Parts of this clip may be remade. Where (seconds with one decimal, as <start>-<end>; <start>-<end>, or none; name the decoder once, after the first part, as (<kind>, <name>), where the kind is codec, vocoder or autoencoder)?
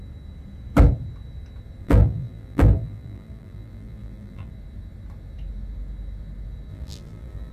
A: 1.8-4.5 (vocoder, BigVGAN v2); 6.7-7.5